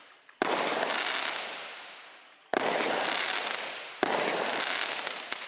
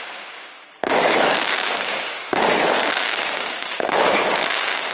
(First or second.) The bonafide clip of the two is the first